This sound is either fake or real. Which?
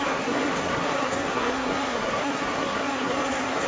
fake